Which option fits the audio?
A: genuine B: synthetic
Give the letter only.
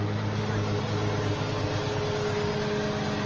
A